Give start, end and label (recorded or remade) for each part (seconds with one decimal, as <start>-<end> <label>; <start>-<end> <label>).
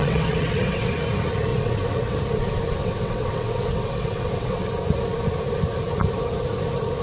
0.0-0.9 remade; 0.9-1.5 recorded; 1.5-2.2 remade; 2.2-2.8 recorded; 2.8-4.7 remade; 4.7-7.0 recorded